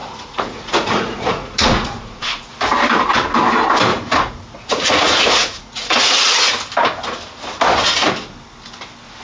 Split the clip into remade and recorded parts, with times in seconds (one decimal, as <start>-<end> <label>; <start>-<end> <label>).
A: 0.0-2.5 remade; 2.5-3.9 recorded; 3.9-6.5 remade; 6.5-9.2 recorded